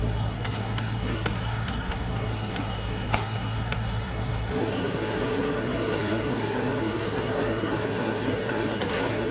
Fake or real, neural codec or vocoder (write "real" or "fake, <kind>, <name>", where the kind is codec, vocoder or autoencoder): fake, codec, SNAC